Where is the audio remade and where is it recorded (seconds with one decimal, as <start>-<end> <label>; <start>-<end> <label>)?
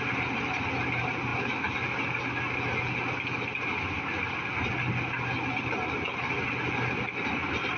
0.0-7.8 recorded